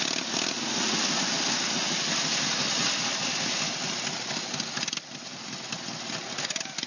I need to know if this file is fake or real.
real